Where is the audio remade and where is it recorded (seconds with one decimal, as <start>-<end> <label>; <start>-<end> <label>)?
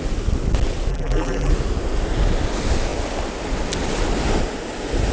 0.0-0.9 recorded; 0.9-1.5 remade; 1.5-5.1 recorded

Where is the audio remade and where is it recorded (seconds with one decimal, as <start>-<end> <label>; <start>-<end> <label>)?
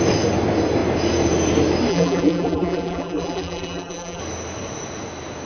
0.0-1.9 recorded; 1.9-4.2 remade; 4.2-5.5 recorded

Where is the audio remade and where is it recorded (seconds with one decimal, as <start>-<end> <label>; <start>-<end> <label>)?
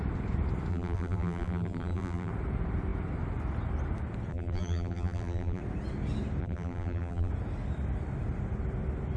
0.0-0.7 recorded; 0.7-2.3 remade; 2.3-4.3 recorded; 4.3-5.6 remade; 5.6-6.4 recorded; 6.4-7.3 remade; 7.3-9.2 recorded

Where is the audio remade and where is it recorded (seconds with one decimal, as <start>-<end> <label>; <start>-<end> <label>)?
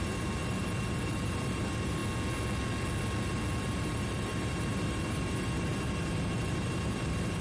0.0-2.0 remade; 2.0-3.6 recorded; 3.6-7.4 remade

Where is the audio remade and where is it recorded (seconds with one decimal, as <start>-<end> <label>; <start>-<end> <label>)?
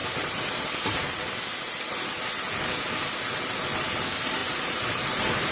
0.0-1.1 remade; 1.1-4.4 recorded; 4.4-5.5 remade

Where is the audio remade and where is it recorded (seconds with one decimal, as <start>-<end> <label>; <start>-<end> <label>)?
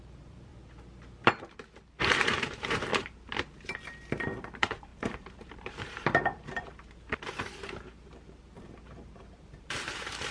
0.0-0.5 remade; 0.5-2.0 recorded; 2.0-2.9 remade; 2.9-4.4 recorded; 4.4-10.3 remade